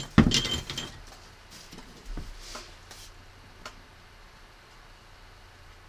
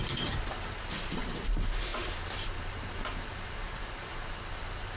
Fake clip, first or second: second